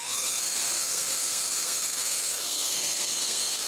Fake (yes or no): yes